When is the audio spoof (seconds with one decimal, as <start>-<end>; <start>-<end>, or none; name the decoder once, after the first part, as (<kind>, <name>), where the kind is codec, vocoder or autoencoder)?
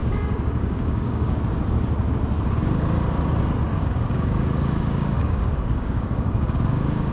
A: 0.0-1.4 (codec, DAC); 3.7-7.1